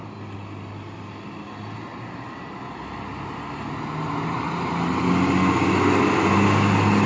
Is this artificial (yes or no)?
no